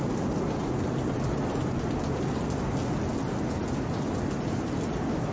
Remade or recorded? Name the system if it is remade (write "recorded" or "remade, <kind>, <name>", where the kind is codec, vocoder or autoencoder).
recorded